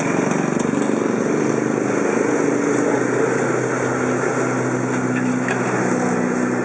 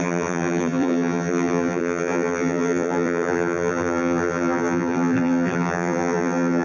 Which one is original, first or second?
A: first